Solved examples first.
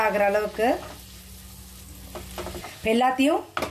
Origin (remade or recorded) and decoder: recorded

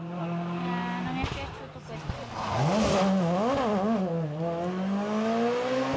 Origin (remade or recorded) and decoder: recorded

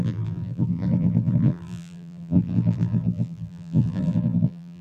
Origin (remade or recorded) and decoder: remade, vocoder, BigVGAN v2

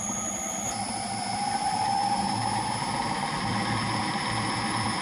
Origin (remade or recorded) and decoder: remade, vocoder, BigVGAN v2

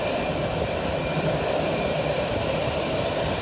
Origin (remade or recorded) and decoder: remade, vocoder, BigVGAN v2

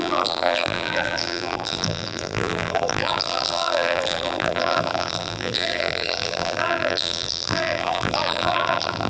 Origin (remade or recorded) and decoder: remade, vocoder, BigVGAN v2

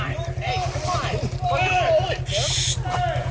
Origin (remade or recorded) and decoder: recorded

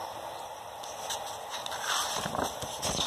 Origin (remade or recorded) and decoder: remade, vocoder, BigVGAN v2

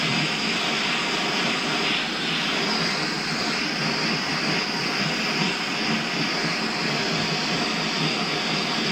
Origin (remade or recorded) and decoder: recorded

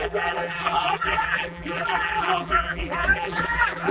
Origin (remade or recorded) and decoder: remade, vocoder, BigVGAN v2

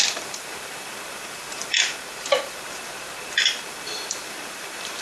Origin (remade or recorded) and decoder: remade, vocoder, BigVGAN v2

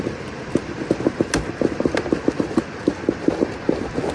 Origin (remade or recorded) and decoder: recorded